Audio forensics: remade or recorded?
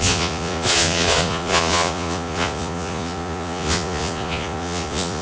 remade